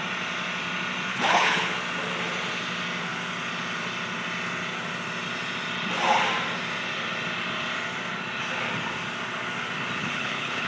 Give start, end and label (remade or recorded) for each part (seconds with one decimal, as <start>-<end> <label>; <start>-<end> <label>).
0.0-1.1 recorded; 1.1-1.7 remade; 1.7-10.0 recorded; 10.0-10.7 remade